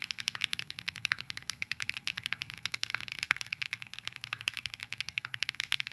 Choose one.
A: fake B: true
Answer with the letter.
A